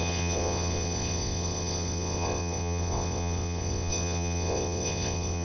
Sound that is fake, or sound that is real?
fake